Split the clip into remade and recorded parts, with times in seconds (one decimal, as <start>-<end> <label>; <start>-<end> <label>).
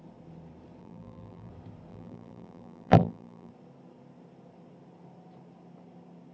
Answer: 0.0-0.8 recorded; 0.8-1.5 remade; 1.5-1.9 recorded; 1.9-3.5 remade; 3.5-6.3 recorded